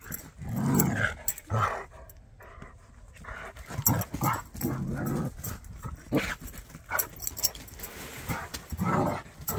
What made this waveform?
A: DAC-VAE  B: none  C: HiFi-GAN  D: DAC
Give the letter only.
B